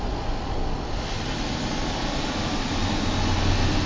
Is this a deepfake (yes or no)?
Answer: no